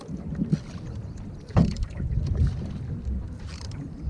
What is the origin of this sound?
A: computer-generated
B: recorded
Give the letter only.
B